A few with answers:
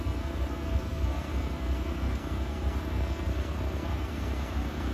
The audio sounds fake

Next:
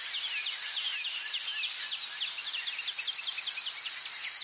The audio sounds real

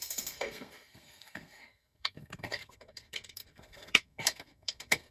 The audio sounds fake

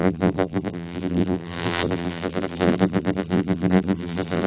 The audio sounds fake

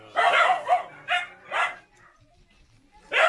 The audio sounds real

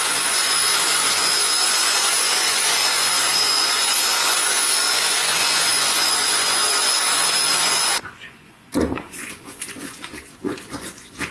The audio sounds fake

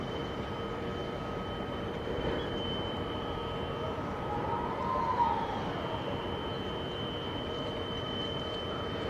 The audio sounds fake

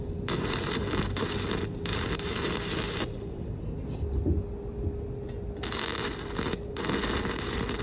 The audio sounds real